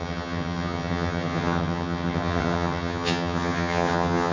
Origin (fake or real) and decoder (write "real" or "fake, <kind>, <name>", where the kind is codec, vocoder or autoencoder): fake, vocoder, HiFi-GAN